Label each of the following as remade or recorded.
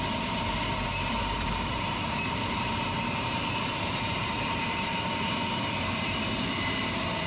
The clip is remade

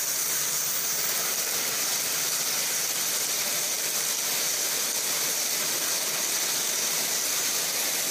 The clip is recorded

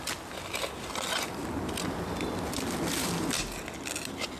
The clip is recorded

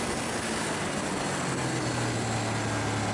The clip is recorded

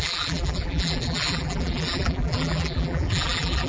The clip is remade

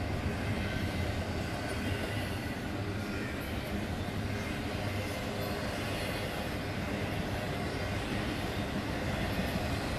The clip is recorded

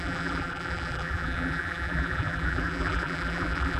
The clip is remade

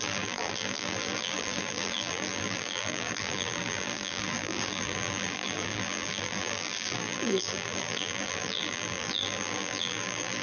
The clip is remade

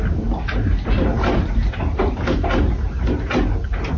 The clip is recorded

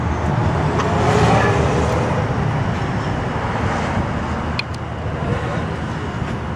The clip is recorded